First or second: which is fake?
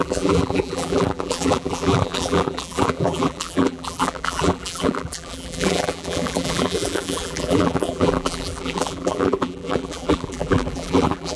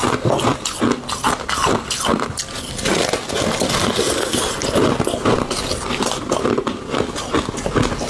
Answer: first